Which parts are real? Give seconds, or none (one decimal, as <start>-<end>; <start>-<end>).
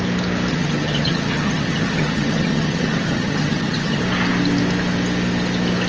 0.0-0.5; 4.0-5.9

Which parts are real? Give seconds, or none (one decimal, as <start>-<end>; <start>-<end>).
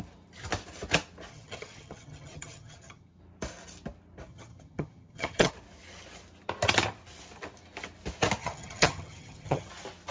0.0-1.3; 3.2-4.3; 5.5-8.4; 9.7-10.1